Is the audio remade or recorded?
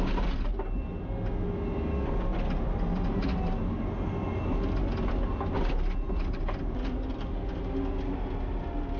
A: recorded